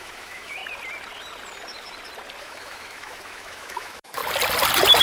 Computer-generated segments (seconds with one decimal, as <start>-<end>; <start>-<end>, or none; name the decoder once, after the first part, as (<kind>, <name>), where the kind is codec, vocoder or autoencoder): 0.0-0.6 (autoencoder, DAC-VAE); 2.4-4.2